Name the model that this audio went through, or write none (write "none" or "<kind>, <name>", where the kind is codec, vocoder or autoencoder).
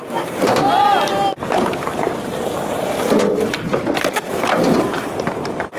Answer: vocoder, BigVGAN v2